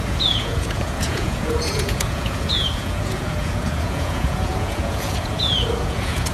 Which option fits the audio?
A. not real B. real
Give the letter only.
A